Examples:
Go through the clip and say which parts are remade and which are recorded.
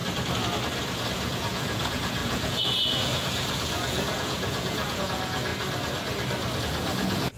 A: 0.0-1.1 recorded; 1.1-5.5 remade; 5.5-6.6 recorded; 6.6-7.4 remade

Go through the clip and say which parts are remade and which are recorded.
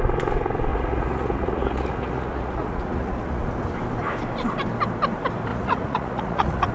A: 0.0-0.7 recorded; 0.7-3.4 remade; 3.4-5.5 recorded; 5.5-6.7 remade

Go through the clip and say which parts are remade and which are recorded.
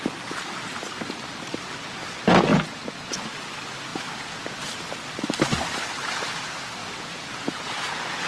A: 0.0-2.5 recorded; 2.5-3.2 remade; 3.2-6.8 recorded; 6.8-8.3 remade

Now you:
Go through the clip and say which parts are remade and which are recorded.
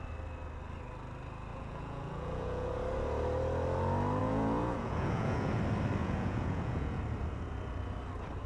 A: 0.0-1.5 recorded; 1.5-2.7 remade; 2.7-4.2 recorded; 4.2-5.6 remade; 5.6-6.0 recorded; 6.0-7.0 remade; 7.0-8.5 recorded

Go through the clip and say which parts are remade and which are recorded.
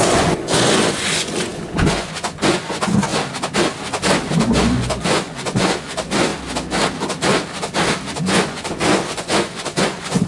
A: 0.0-3.1 remade; 3.1-4.2 recorded; 4.2-6.3 remade; 6.3-8.2 recorded; 8.2-10.3 remade